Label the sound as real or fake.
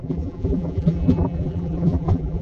fake